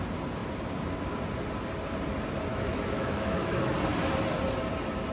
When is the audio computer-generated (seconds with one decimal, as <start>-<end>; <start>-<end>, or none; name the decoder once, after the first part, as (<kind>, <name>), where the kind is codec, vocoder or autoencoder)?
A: 2.5-3.7 (autoencoder, DAC-VAE)